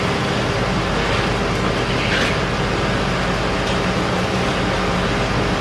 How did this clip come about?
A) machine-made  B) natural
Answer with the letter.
B